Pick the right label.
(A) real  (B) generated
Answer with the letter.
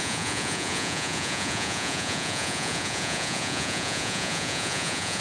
B